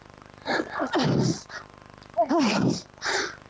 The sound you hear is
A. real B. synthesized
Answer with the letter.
A